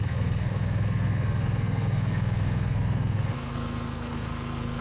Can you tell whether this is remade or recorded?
remade